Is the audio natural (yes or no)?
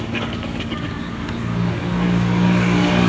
no